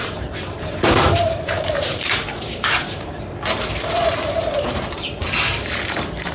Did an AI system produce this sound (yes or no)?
yes